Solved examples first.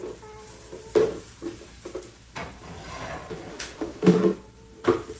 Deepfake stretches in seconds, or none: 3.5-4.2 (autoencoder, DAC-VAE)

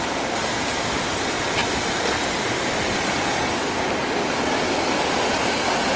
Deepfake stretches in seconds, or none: none

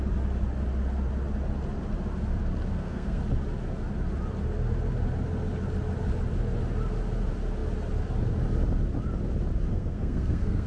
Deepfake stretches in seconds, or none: 2.7-3.2 (codec, SNAC); 9.7-10.7

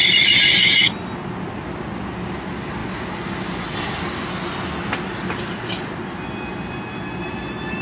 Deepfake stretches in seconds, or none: none

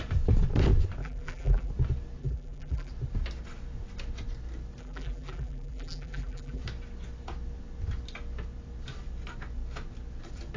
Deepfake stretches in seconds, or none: 1.0-1.7 (vocoder, BigVGAN v2); 2.2-2.9; 4.8-6.6

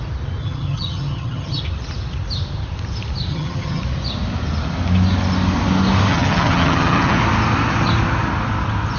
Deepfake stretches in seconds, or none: 0.4-1.6 (vocoder, HiFi-GAN); 3.3-3.8; 6.1-7.2